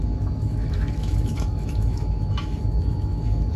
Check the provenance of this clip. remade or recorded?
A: remade